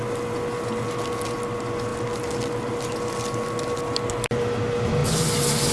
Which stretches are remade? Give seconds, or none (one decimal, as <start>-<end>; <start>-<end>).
none